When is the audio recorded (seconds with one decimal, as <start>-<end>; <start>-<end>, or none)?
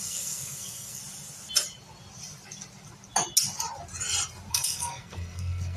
1.0-4.5